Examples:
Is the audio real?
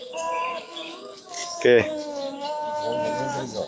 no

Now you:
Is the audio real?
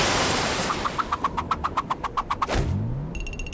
yes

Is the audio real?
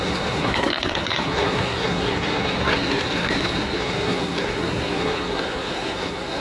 no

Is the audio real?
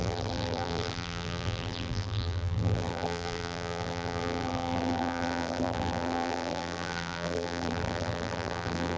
no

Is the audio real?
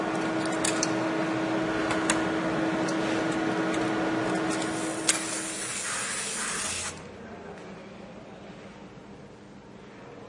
yes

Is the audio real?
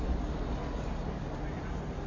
yes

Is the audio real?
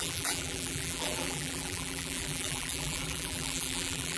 no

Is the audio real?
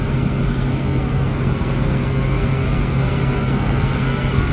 no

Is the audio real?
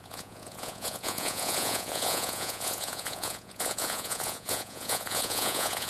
no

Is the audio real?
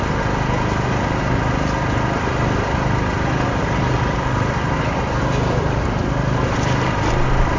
yes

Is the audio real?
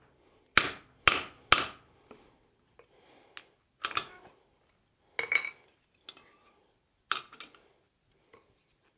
yes